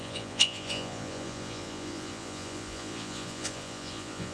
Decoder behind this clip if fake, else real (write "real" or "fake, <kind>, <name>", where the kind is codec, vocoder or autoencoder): fake, vocoder, Vocos